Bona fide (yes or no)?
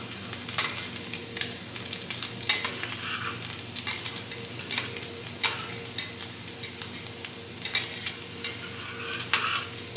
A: yes